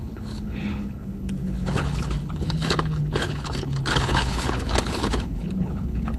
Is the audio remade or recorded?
remade